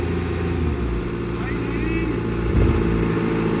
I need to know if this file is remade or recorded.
recorded